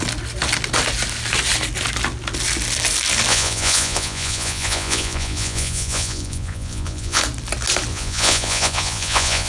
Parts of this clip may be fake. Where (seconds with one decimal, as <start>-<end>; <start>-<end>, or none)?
3.3-7.2; 7.9-9.5

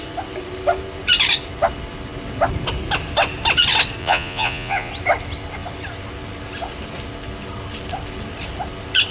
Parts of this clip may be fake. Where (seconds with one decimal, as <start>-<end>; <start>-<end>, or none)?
4.0-4.9